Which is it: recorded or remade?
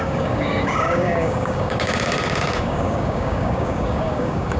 remade